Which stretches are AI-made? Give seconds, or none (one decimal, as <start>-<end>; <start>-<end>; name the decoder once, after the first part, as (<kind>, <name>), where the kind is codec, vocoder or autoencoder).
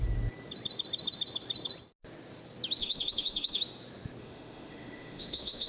2.8-3.6 (autoencoder, DAC-VAE); 4.2-5.7